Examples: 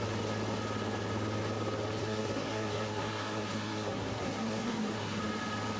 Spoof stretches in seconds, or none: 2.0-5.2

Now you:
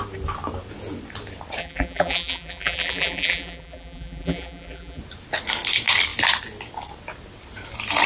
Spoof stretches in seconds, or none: 1.6-5.0

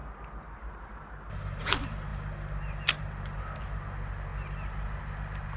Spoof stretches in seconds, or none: none

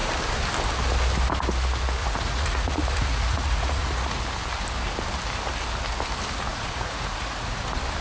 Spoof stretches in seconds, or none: 2.0-4.2; 6.5-7.6

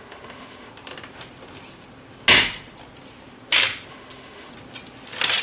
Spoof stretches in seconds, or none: 0.0-0.7; 3.9-4.5